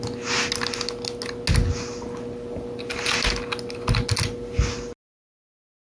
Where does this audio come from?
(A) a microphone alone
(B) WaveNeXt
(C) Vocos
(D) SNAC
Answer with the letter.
A